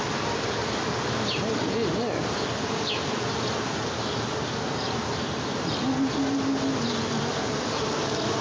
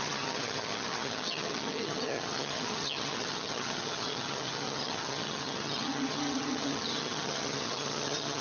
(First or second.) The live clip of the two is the first